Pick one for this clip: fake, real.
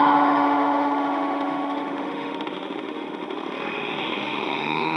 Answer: fake